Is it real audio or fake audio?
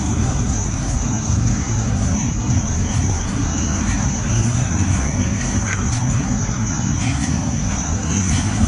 fake